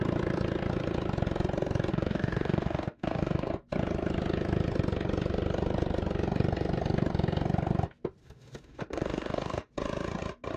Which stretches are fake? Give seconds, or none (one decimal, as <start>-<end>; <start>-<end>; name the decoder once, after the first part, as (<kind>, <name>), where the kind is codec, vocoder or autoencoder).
1.9-3.5 (autoencoder, DAC-VAE); 8.2-9.7